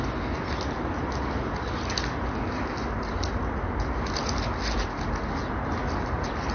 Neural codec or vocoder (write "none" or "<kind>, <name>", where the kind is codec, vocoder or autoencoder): none